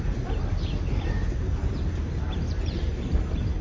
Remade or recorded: remade